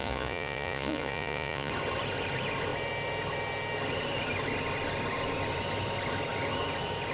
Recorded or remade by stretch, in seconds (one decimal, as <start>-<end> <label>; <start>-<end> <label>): 0.0-1.7 remade; 1.7-7.1 recorded